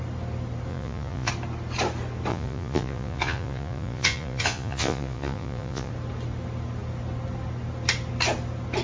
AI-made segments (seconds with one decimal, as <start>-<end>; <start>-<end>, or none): 0.7-1.3; 2.3-5.9